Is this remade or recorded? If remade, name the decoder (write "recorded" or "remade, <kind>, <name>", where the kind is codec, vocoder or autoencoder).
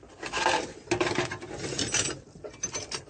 recorded